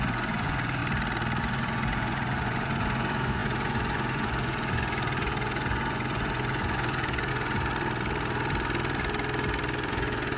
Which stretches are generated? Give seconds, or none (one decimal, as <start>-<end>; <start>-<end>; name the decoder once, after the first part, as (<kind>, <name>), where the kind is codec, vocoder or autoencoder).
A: 0.0-0.8 (vocoder, Vocos); 1.4-7.7; 9.9-10.4

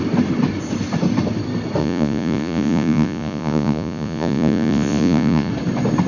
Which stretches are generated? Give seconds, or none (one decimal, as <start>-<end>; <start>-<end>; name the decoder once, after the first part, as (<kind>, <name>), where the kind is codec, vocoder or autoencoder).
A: 1.8-5.5 (vocoder, Vocos)

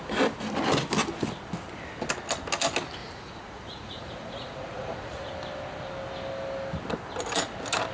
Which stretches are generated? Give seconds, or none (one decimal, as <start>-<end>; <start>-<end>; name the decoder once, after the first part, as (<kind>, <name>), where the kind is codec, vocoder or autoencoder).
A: 3.0-5.3 (vocoder, Vocos)

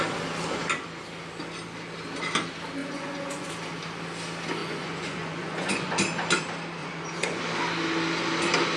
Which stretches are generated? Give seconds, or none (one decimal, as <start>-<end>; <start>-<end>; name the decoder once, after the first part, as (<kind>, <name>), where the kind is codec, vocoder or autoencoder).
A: 2.8-3.5 (vocoder, Vocos); 4.6-5.9; 6.8-7.4

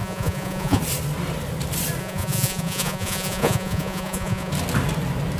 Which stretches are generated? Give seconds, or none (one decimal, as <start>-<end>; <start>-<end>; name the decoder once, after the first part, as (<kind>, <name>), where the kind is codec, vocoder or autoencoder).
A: 0.0-0.8 (vocoder, Vocos); 2.0-4.5

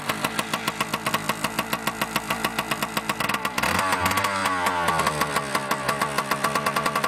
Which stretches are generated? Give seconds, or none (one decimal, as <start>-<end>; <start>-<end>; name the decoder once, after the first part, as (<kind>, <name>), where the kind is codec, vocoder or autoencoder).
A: none